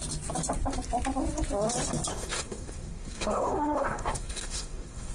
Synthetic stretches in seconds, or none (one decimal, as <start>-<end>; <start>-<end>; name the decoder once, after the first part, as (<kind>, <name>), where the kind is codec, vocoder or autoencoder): 2.1-5.1 (codec, SNAC)